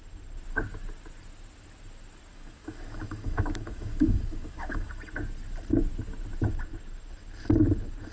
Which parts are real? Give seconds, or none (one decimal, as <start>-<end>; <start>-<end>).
0.0-2.3; 4.9-8.1

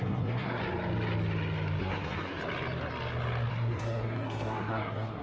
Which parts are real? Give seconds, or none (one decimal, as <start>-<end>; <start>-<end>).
0.6-1.8; 2.4-3.5